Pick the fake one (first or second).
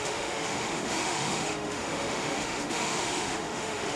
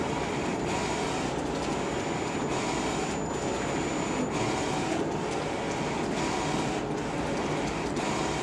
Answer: first